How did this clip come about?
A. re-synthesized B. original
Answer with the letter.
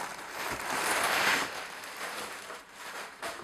A